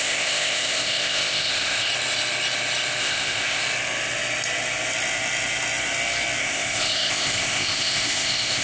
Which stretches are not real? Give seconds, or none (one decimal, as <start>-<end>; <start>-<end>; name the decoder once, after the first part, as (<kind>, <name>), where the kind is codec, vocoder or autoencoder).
0.0-1.9 (codec, ZipCodec); 3.0-3.6; 6.4-8.6